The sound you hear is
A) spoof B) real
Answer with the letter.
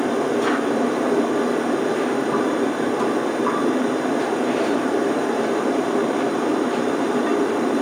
A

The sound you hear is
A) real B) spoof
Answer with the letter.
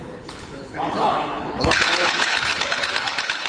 B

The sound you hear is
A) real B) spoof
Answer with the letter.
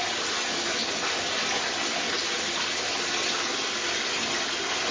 A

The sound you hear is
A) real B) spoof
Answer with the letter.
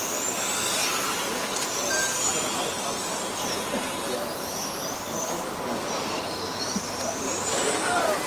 A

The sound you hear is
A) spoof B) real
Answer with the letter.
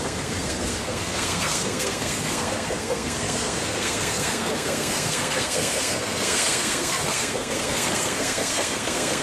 A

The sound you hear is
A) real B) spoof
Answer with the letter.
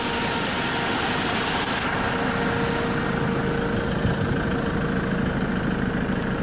A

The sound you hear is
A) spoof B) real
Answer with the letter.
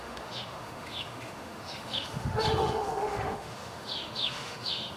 A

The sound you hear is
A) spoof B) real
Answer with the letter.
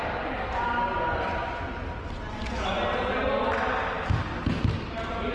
B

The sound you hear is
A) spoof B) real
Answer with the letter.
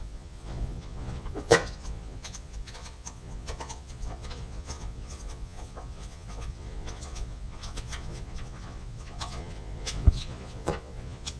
A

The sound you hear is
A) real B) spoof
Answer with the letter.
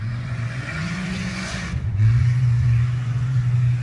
B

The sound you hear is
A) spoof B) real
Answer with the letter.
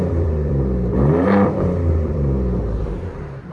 A